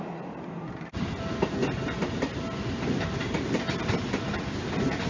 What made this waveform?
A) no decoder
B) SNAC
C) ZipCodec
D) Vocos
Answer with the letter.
A